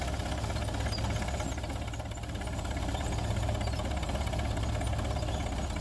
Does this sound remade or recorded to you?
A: recorded